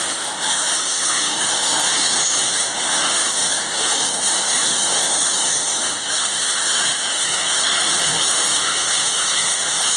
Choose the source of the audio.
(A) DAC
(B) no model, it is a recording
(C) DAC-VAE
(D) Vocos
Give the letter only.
C